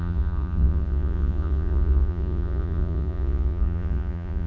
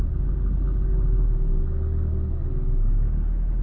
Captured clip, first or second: second